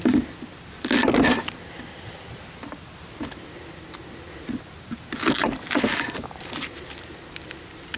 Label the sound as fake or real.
real